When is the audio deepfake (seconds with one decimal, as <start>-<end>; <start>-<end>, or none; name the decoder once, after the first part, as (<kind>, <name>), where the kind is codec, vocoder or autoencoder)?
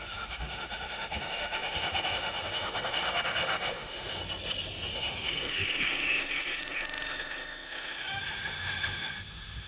0.0-4.2 (autoencoder, DAC-VAE); 4.9-9.7